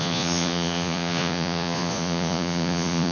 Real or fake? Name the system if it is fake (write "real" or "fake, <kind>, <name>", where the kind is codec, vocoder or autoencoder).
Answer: fake, vocoder, Vocos